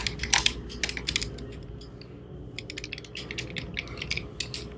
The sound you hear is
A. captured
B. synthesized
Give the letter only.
A